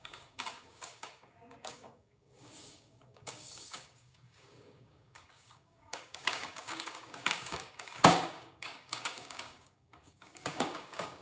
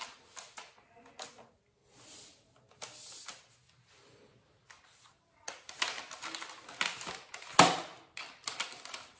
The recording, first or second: second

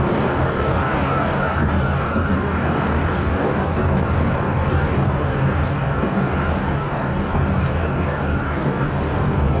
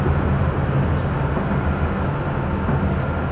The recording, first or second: second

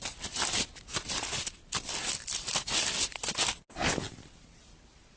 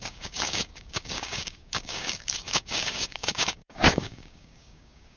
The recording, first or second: first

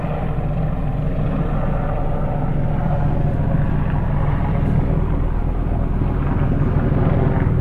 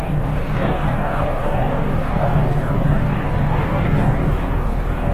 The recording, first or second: first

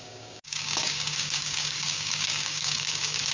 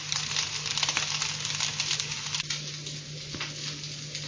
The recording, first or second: second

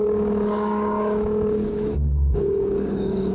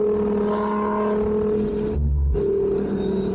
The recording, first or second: second